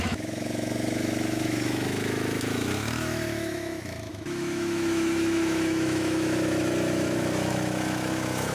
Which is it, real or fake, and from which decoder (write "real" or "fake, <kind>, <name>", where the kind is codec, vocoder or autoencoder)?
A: fake, autoencoder, DAC-VAE